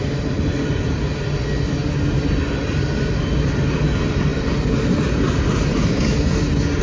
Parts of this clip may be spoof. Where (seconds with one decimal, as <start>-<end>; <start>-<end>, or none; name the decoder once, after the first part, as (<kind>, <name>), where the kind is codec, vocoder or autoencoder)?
none